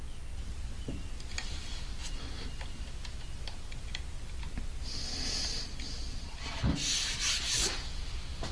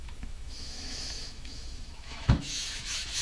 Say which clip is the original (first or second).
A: first